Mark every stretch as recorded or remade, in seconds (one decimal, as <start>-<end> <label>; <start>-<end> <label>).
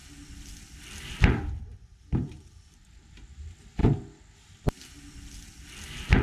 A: 0.0-6.2 recorded